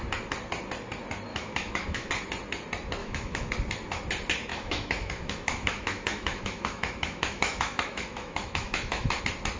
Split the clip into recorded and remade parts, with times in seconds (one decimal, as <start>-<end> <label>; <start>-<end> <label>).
0.0-1.3 recorded; 1.3-2.1 remade; 2.1-3.0 recorded; 3.0-3.5 remade; 3.5-4.5 recorded; 4.5-9.2 remade; 9.2-9.6 recorded